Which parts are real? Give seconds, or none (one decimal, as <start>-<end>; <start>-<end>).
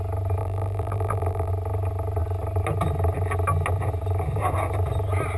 0.0-0.4; 1.5-5.4